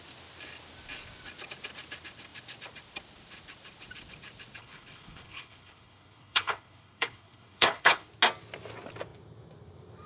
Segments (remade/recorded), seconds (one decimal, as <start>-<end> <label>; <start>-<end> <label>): 0.0-4.6 recorded; 4.6-8.1 remade; 8.1-10.1 recorded